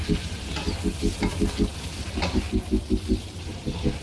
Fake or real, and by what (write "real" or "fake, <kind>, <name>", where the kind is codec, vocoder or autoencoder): real